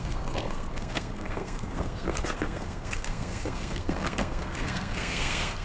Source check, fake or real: fake